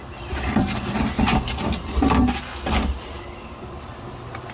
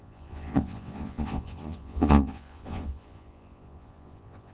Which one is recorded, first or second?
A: first